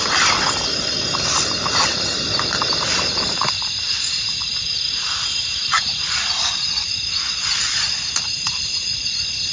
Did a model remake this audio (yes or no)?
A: no